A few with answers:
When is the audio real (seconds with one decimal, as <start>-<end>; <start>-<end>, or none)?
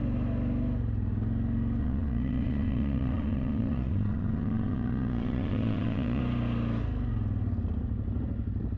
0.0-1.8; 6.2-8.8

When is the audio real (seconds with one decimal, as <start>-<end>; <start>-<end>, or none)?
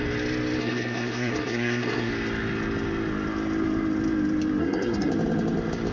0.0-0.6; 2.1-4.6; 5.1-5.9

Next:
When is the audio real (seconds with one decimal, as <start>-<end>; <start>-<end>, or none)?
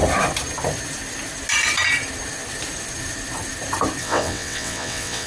0.0-4.0